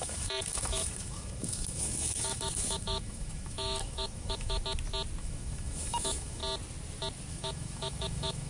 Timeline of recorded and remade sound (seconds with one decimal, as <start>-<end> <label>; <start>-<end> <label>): 0.0-4.6 remade; 4.6-5.2 recorded; 5.2-6.4 remade; 6.4-7.3 recorded; 7.3-8.5 remade